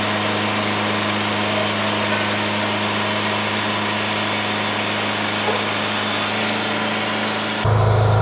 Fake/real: real